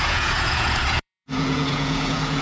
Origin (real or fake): fake